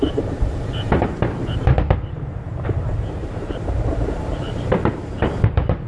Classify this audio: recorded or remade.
remade